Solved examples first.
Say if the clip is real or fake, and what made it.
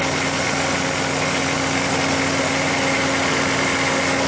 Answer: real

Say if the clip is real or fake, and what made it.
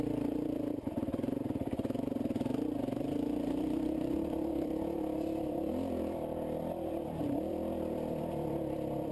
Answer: fake, vocoder, BigVGAN v2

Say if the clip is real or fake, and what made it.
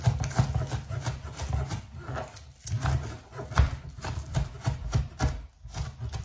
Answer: real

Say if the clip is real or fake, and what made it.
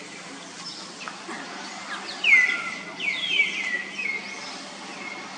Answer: real